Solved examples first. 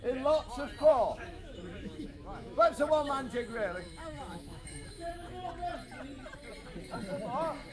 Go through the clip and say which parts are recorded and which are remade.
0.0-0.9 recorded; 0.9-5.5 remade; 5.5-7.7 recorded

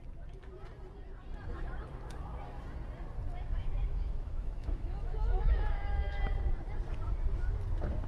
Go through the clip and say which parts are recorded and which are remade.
0.0-3.6 recorded; 3.6-6.2 remade; 6.2-8.1 recorded

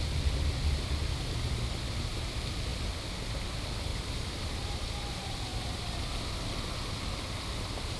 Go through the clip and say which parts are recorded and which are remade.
0.0-3.9 recorded; 3.9-4.7 remade; 4.7-8.0 recorded

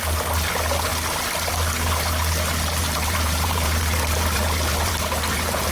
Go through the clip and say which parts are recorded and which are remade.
0.0-2.8 recorded; 2.8-5.7 remade

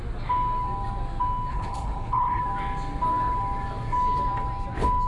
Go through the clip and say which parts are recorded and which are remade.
0.0-1.5 recorded; 1.5-2.4 remade; 2.4-5.1 recorded

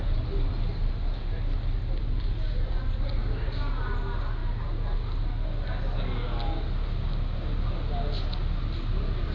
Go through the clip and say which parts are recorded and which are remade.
0.0-9.3 recorded